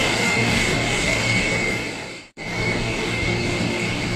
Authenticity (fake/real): fake